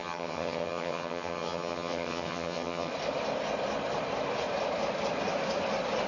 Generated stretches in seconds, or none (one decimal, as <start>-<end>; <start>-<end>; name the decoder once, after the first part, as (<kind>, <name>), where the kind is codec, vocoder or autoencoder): 0.0-2.9 (vocoder, HiFi-GAN)